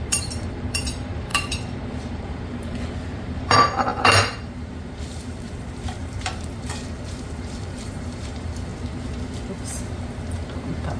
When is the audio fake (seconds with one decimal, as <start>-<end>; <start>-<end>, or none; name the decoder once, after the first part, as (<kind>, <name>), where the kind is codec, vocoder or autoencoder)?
0.0-8.7 (vocoder, BigVGAN v2); 9.7-11.0